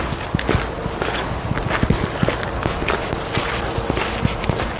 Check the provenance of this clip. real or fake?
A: real